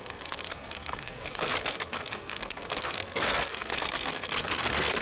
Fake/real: fake